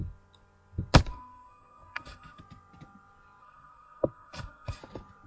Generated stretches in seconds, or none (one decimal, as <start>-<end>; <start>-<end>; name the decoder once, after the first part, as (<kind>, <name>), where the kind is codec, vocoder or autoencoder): 1.1-2.4 (codec, SNAC); 3.4-4.8